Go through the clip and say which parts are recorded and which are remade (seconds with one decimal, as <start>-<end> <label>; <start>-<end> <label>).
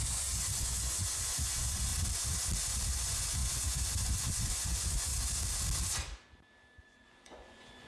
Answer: 0.0-1.9 remade; 1.9-3.0 recorded; 3.0-5.1 remade; 5.1-6.8 recorded; 6.8-7.9 remade